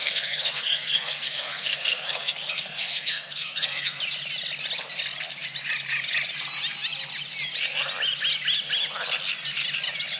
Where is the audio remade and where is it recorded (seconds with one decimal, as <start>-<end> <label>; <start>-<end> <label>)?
0.0-4.0 remade; 4.0-10.2 recorded